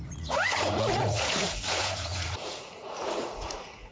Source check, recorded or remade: remade